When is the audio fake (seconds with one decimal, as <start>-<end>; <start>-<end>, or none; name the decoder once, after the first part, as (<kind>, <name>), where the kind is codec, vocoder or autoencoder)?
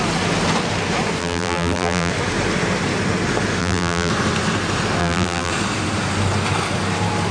1.2-2.1 (vocoder, BigVGAN v2); 3.6-4.1; 5.0-5.5